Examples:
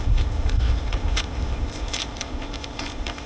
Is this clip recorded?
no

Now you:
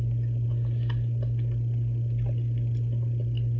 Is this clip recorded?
yes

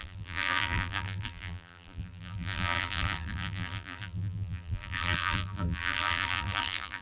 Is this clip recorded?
no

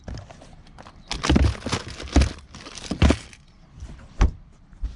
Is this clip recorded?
yes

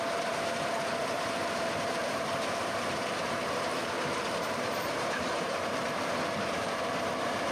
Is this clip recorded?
no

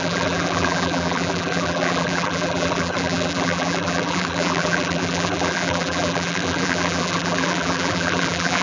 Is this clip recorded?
no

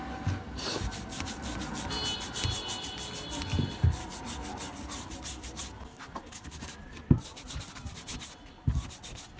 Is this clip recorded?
yes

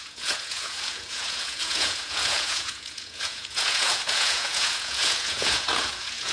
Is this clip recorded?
no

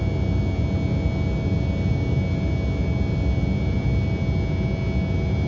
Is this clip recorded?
yes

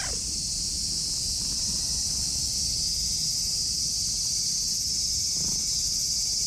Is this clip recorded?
yes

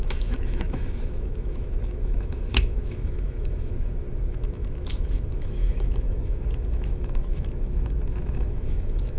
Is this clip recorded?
no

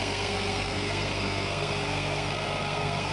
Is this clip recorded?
no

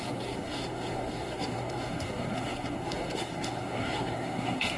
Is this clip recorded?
no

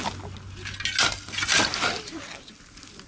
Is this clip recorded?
yes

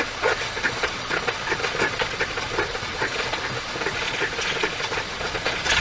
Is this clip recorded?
no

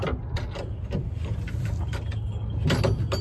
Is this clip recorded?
yes